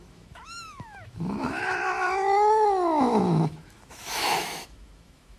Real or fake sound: fake